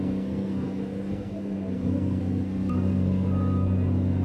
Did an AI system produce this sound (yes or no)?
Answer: yes